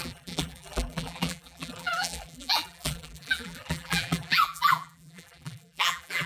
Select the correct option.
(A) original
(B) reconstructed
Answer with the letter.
B